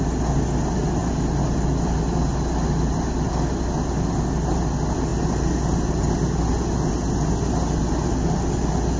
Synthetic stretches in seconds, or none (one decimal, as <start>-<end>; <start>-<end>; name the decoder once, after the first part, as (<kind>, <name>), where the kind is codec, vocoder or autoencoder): none